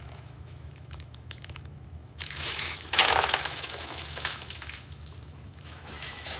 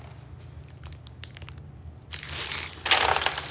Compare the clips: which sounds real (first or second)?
second